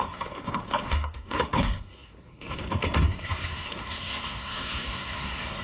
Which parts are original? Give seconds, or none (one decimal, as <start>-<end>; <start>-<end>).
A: none